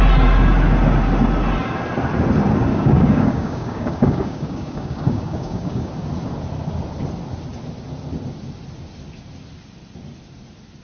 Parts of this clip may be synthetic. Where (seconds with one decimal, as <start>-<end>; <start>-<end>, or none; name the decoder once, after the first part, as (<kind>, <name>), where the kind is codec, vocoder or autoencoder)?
2.7-5.9 (codec, DAC)

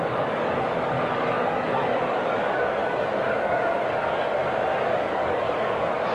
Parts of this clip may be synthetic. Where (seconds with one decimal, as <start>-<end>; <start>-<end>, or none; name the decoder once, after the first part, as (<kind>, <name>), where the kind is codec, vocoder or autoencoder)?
0.0-4.4 (codec, DAC); 5.1-6.1

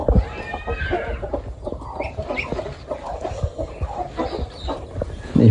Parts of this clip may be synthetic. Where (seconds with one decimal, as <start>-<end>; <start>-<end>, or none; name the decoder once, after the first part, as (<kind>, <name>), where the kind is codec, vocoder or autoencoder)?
none